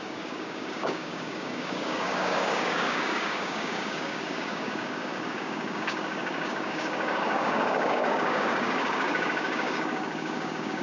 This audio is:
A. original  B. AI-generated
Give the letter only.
B